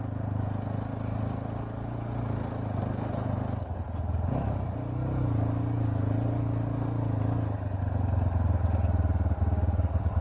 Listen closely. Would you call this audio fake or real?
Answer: real